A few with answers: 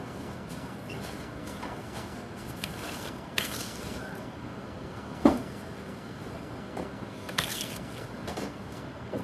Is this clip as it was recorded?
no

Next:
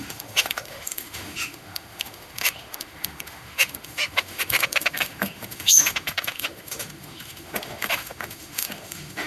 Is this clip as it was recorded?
no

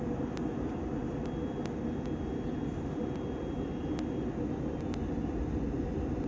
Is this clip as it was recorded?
yes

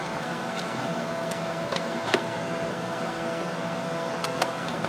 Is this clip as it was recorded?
no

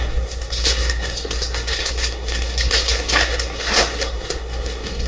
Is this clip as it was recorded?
no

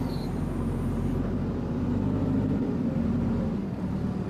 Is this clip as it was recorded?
yes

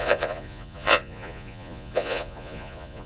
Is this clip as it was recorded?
no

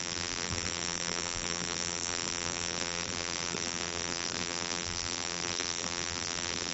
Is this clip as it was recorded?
no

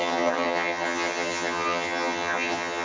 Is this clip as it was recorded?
no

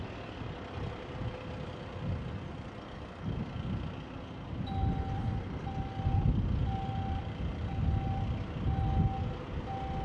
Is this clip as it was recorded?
yes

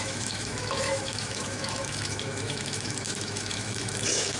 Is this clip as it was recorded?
no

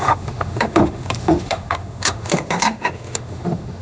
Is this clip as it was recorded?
no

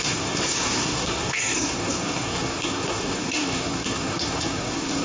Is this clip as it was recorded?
no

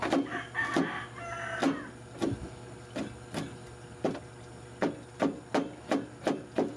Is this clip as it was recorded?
yes